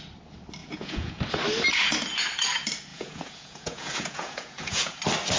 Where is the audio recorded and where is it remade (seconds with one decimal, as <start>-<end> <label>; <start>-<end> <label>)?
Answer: 0.0-0.6 recorded; 0.6-1.2 remade; 1.2-2.9 recorded; 2.9-5.0 remade; 5.0-5.4 recorded